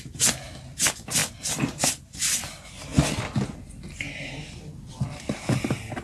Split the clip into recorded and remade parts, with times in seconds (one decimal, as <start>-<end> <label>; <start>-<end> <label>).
0.0-1.2 recorded; 1.2-1.9 remade; 1.9-6.0 recorded